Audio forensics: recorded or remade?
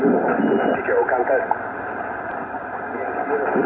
recorded